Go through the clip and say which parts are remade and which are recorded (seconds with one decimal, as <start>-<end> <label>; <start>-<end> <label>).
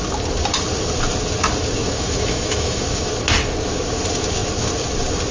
0.0-1.8 recorded; 1.8-3.1 remade; 3.1-5.3 recorded